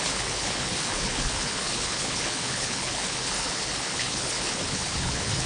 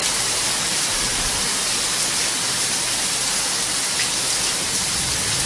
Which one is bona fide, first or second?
second